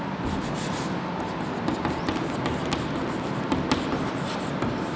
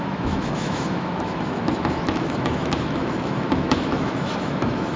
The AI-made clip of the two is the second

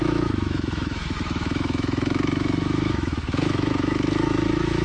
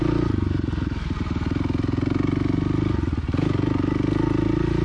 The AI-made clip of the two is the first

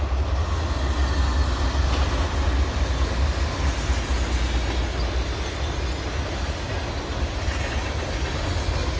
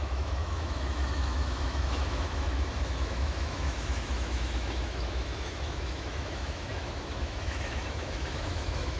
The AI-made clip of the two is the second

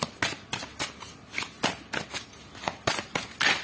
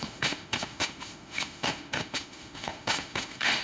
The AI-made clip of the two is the second